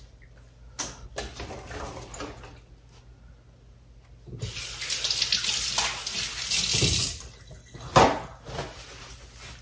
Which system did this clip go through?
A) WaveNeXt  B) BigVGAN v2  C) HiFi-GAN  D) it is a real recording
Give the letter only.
D